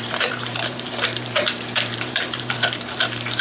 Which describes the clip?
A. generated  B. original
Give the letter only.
A